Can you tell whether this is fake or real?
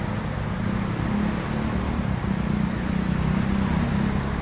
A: real